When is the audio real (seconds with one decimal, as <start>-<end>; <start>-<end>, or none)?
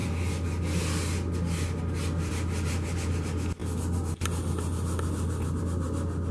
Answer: 0.0-6.3